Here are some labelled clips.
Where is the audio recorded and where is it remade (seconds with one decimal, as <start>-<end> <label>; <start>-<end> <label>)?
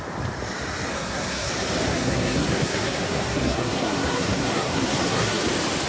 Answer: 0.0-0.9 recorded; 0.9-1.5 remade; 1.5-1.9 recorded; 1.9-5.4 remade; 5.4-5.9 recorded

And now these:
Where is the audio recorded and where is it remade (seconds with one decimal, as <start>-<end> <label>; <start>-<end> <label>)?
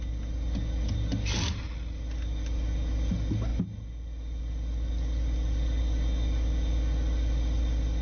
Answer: 0.0-8.0 recorded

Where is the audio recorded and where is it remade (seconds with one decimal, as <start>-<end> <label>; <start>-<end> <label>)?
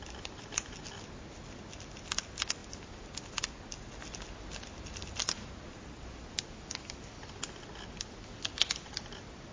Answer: 0.0-9.5 recorded